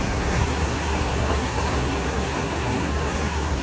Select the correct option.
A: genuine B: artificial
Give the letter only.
B